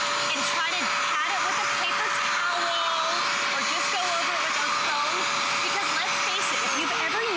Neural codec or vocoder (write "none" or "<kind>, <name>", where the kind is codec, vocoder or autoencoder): none